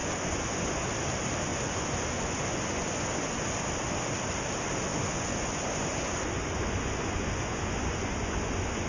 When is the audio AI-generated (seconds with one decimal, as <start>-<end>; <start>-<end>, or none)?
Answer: 0.0-0.9; 1.5-3.7; 4.9-8.9